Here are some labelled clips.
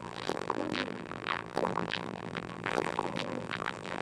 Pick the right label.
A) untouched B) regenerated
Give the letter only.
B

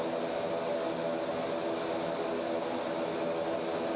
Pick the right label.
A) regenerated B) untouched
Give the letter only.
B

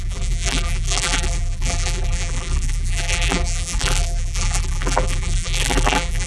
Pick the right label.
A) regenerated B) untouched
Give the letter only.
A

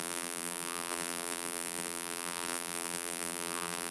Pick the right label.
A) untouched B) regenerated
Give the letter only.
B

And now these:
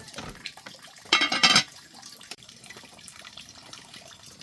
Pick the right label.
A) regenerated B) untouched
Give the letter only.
A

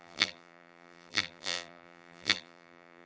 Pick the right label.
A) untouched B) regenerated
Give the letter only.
B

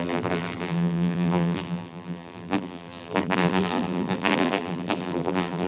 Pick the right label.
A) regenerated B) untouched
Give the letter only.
A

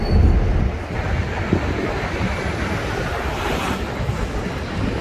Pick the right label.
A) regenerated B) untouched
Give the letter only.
B